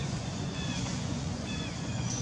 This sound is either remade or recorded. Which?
remade